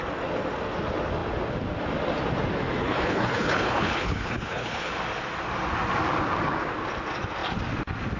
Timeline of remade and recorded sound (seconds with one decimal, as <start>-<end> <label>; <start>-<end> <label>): 0.0-2.8 recorded; 2.8-4.9 remade; 4.9-8.2 recorded